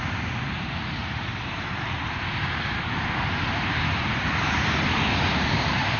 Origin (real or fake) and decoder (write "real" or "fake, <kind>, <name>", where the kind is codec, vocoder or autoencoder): real